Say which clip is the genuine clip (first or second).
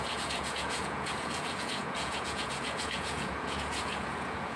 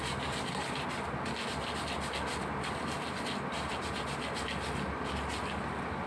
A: second